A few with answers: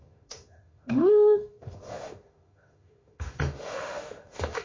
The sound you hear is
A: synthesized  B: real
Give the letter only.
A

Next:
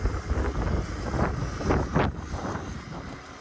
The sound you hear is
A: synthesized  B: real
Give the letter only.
B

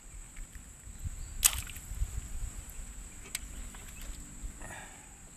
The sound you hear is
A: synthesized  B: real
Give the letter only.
B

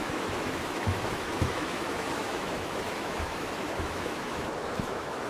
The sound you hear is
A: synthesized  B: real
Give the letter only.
A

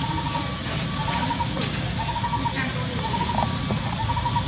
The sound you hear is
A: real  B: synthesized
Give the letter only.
A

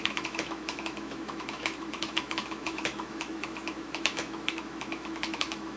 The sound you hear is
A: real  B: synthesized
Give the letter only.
B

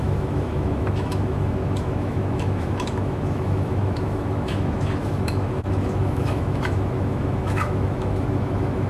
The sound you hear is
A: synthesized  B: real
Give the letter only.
A